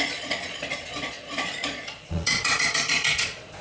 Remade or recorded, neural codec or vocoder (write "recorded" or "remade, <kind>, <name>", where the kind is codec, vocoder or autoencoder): remade, vocoder, Vocos